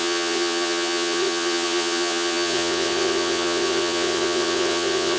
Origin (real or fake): fake